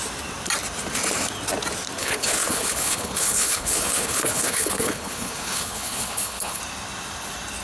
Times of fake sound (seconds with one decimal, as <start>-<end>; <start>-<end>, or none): 2.0-6.6